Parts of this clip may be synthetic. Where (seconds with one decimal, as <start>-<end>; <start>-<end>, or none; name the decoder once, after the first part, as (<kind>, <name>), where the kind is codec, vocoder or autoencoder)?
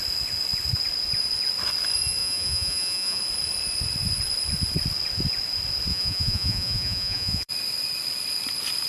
2.2-3.2 (vocoder, Vocos); 5.9-7.5